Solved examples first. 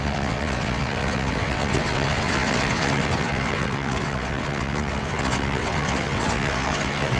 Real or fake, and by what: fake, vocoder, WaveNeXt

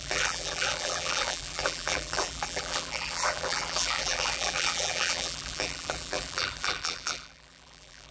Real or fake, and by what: fake, vocoder, BigVGAN v2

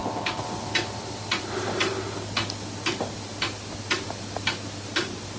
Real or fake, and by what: real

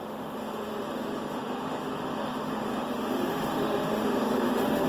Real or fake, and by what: fake, autoencoder, DAC-VAE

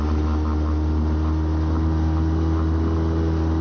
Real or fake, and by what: real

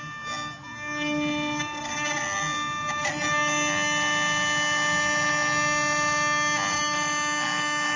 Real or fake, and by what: real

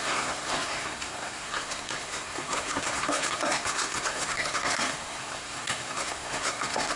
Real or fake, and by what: fake, codec, SNAC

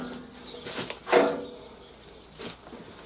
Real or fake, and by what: real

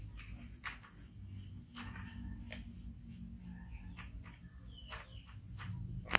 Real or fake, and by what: real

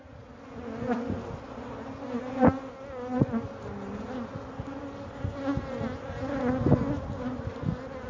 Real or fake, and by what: real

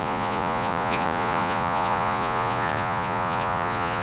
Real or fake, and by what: fake, vocoder, Vocos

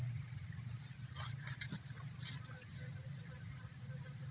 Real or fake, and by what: fake, vocoder, BigVGAN v2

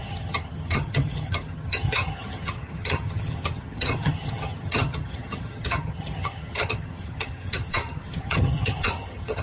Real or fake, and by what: fake, vocoder, HiFi-GAN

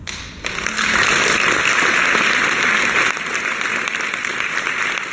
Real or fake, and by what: real